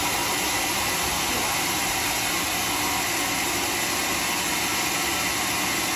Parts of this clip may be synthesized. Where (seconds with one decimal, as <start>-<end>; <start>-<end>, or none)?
none